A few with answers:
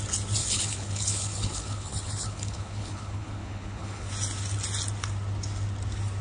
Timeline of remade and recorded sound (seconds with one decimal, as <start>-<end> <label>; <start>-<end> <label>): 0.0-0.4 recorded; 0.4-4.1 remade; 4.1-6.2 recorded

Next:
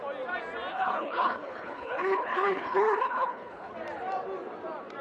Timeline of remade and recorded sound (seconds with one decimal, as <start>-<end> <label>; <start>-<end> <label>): 0.0-0.7 recorded; 0.7-3.7 remade; 3.7-5.0 recorded

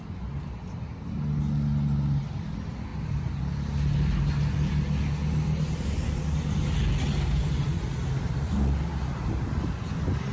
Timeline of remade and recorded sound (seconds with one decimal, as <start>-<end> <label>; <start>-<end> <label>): 0.0-10.3 recorded

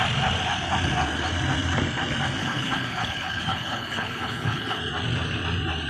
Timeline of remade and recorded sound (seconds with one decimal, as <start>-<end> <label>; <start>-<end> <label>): 0.0-2.4 recorded; 2.4-4.8 remade; 4.8-5.9 recorded

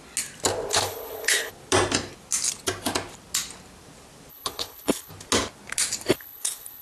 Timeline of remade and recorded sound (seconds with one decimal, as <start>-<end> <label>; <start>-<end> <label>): 0.0-0.7 recorded; 0.7-1.5 remade; 1.5-4.3 recorded; 4.3-5.1 remade; 5.1-6.1 recorded; 6.1-6.8 remade

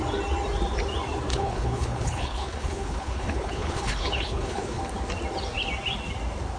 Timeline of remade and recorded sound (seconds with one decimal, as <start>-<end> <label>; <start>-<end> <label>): 0.0-1.3 recorded; 1.3-4.8 remade; 4.8-6.6 recorded

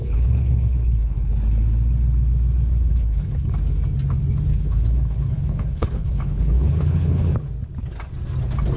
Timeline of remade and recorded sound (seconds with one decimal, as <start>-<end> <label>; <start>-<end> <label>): 0.0-1.3 remade; 1.3-2.9 recorded; 2.9-3.5 remade; 3.5-4.5 recorded; 4.5-7.3 remade; 7.3-8.8 recorded